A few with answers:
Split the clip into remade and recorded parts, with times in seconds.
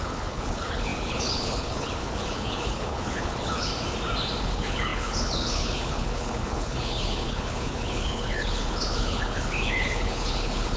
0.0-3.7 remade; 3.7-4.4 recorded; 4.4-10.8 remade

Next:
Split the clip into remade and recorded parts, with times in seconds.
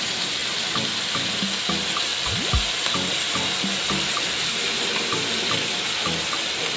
0.0-6.8 recorded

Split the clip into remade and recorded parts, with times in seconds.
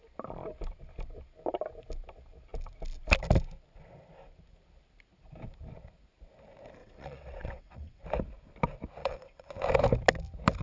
0.0-6.8 recorded; 6.8-8.0 remade; 8.0-9.0 recorded; 9.0-9.5 remade; 9.5-10.6 recorded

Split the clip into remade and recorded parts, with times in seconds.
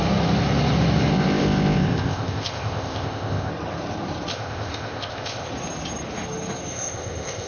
0.0-1.1 recorded; 1.1-3.5 remade; 3.5-4.3 recorded; 4.3-5.5 remade; 5.5-6.7 recorded; 6.7-7.5 remade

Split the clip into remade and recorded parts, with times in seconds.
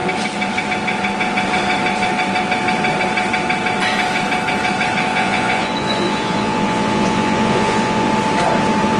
0.0-5.1 recorded; 5.1-8.1 remade; 8.1-9.0 recorded